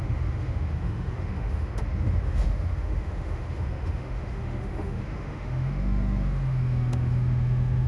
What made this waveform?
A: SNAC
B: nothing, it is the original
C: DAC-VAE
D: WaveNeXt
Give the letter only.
C